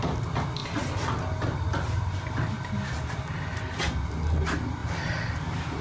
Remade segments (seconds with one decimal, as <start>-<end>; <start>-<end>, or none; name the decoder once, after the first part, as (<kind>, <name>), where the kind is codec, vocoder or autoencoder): none